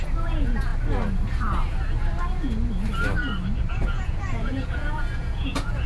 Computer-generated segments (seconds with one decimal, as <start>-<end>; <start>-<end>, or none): 0.0-0.7; 3.7-5.9